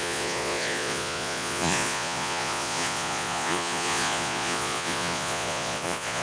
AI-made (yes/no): yes